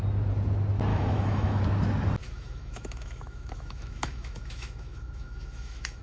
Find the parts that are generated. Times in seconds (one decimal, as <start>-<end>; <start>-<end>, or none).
0.9-1.6; 2.2-6.0